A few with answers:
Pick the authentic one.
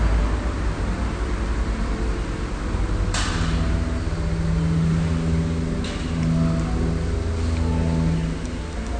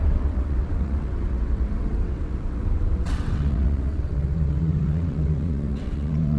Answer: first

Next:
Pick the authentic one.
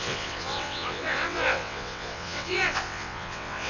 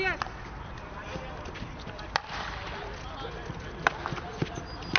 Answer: second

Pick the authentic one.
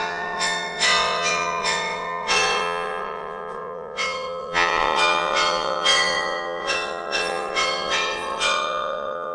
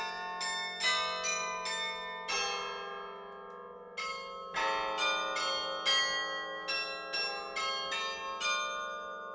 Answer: second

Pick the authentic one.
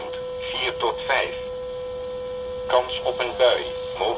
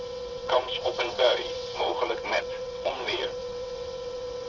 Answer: first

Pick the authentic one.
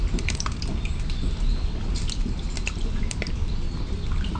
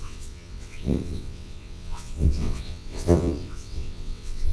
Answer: first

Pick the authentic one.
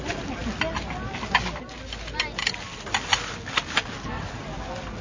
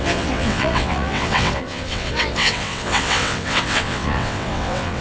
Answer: first